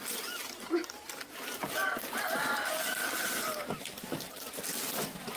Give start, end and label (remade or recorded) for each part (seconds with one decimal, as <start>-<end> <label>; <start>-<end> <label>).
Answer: 0.0-5.4 recorded